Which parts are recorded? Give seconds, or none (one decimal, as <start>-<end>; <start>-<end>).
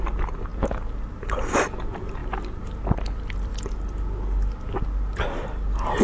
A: 0.5-1.8; 2.2-2.8; 3.5-6.0